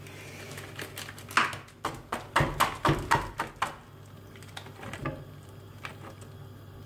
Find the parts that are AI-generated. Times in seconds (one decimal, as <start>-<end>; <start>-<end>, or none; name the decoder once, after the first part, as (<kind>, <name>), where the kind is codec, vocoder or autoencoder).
none